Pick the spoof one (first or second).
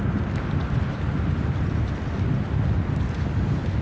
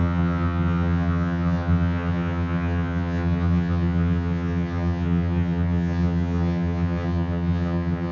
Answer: second